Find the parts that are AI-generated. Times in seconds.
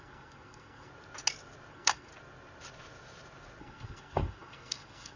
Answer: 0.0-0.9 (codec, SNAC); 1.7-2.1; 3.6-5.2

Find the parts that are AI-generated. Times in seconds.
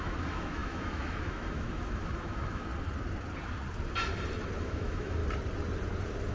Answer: 0.0-2.7 (autoencoder, DAC-VAE); 4.6-5.2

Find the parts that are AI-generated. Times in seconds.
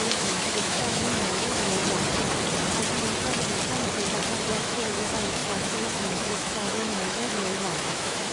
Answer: 0.0-1.8 (autoencoder, DAC-VAE); 4.5-8.3